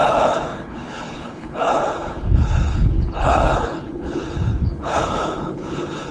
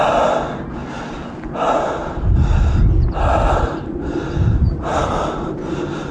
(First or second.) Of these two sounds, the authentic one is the second